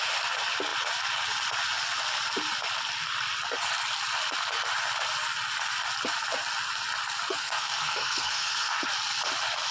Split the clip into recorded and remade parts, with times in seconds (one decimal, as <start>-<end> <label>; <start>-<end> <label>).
0.0-7.4 recorded; 7.4-8.9 remade; 8.9-9.7 recorded